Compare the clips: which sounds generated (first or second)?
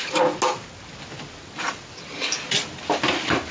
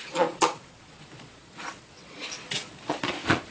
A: second